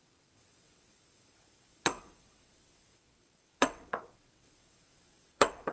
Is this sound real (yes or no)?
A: no